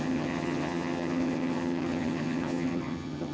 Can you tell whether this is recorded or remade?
remade